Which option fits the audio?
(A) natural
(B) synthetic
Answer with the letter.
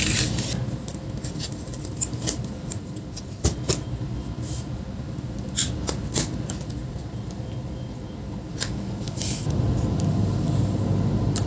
A